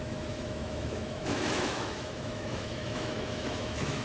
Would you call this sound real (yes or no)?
no